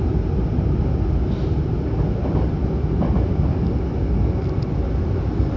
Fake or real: real